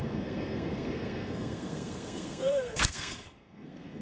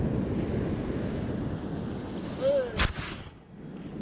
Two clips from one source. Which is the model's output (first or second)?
first